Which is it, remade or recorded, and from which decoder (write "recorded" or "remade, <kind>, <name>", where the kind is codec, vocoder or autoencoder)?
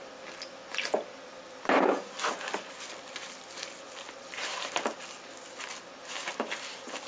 recorded